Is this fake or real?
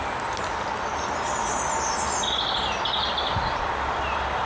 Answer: real